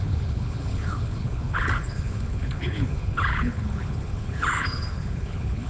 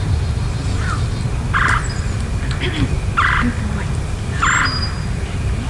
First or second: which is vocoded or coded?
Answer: first